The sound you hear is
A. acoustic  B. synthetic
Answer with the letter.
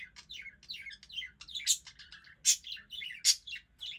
A